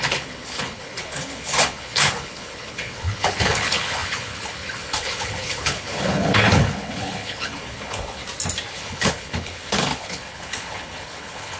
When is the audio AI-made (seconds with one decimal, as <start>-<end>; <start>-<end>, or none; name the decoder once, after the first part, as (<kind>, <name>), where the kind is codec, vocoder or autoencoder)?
0.0-8.2 (codec, HILCodec); 8.7-11.6